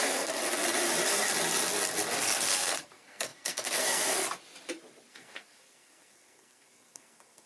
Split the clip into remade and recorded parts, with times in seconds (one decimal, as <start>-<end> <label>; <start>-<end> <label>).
0.0-0.4 remade; 0.4-2.2 recorded; 2.2-4.2 remade; 4.2-5.1 recorded; 5.1-7.5 remade